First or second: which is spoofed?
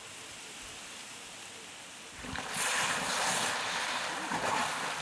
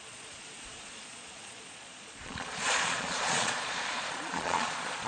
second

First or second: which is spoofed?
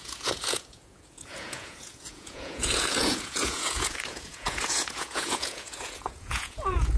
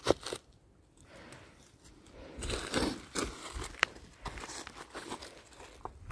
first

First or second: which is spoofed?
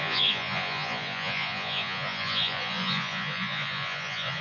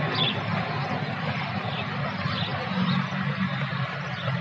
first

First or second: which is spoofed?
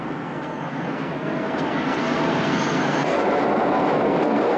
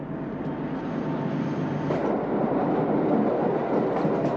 first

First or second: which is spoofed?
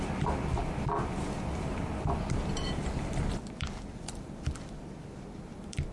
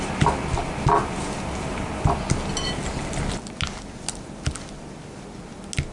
first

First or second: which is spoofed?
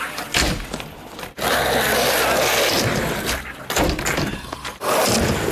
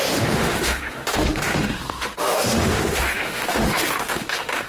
second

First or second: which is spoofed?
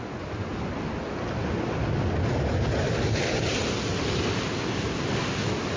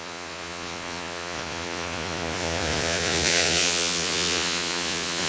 second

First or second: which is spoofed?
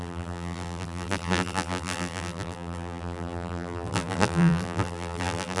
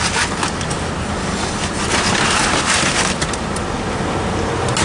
first